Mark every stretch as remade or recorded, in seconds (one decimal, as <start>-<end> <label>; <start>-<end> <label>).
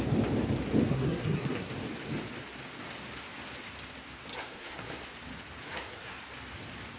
0.0-0.9 recorded; 0.9-1.7 remade; 1.7-4.3 recorded; 4.3-5.0 remade; 5.0-5.6 recorded; 5.6-6.2 remade; 6.2-7.0 recorded